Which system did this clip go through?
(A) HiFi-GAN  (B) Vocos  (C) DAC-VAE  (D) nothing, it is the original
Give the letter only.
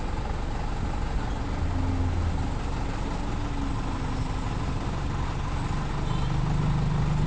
D